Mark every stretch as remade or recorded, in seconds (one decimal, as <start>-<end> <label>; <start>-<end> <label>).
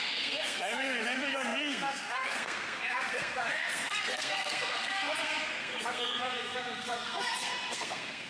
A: 0.0-8.3 remade